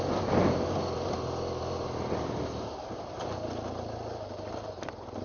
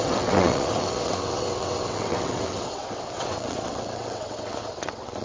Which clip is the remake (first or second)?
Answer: second